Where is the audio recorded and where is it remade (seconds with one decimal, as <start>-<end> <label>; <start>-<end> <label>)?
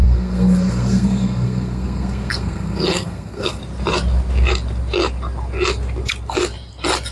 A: 0.0-3.6 remade; 3.6-7.1 recorded